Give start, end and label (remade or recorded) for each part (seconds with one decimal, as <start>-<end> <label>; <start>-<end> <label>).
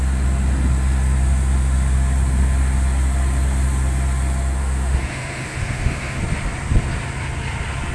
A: 0.0-4.6 recorded; 4.6-6.2 remade; 6.2-7.9 recorded